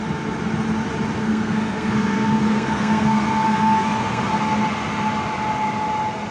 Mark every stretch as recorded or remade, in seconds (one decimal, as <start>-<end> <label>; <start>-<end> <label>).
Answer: 0.0-1.2 recorded; 1.2-4.2 remade; 4.2-6.3 recorded

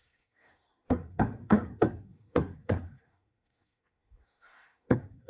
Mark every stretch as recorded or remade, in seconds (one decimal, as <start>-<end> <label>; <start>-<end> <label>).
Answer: 0.0-5.3 remade

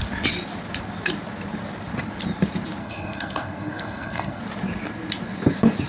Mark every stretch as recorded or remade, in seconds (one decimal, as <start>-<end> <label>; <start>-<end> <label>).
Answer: 0.0-2.8 recorded; 2.8-4.4 remade; 4.4-5.9 recorded